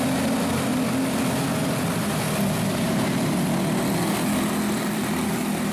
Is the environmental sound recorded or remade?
recorded